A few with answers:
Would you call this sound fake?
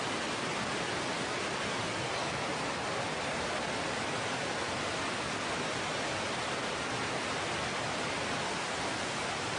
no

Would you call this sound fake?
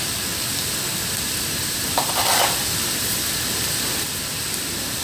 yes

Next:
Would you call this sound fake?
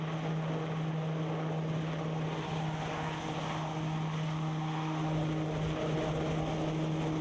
no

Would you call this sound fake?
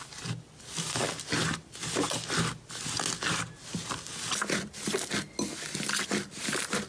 no